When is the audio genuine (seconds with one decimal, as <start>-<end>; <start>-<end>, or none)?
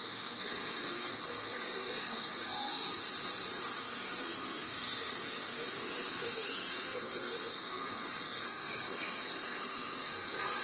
3.0-3.8